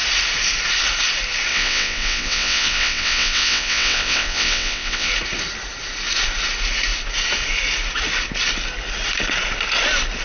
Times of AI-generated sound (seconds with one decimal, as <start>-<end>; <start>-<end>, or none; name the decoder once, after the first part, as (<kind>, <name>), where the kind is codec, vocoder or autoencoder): 1.5-5.1 (vocoder, WaveNeXt)